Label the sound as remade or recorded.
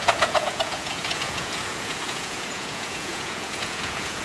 remade